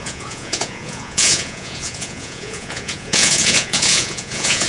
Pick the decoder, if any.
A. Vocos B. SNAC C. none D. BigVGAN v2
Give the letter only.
A